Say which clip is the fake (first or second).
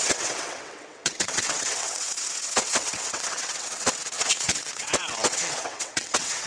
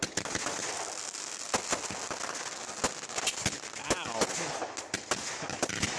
first